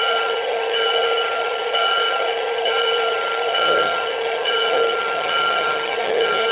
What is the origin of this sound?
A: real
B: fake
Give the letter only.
B